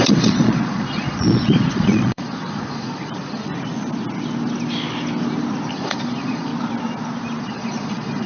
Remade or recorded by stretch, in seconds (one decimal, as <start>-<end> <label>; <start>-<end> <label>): 0.0-3.5 remade; 3.5-5.7 recorded; 5.7-6.5 remade; 6.5-7.4 recorded; 7.4-8.3 remade